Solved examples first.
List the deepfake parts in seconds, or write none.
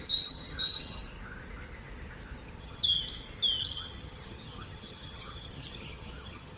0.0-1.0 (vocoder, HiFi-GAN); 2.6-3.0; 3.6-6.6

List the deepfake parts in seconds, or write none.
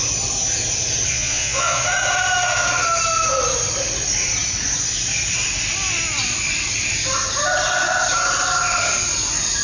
1.1-1.8 (vocoder, Vocos)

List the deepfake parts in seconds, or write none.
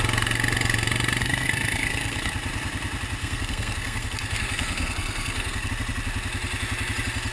1.2-2.3 (codec, SNAC); 3.2-5.7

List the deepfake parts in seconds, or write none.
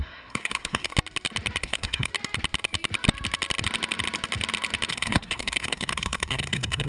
0.0-0.9 (codec, SNAC); 1.6-2.1; 4.9-6.9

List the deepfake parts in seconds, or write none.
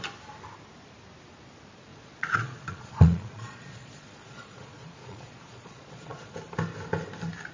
1.9-6.3 (vocoder, Vocos)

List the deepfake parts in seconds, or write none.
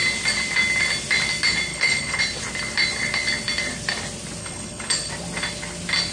1.7-2.2 (codec, HILCodec); 4.4-5.1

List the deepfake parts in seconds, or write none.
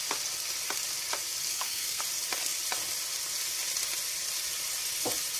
1.5-2.0 (codec, SNAC)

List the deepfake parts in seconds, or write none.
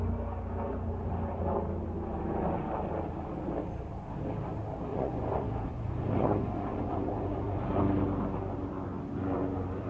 4.9-7.8 (vocoder, Vocos)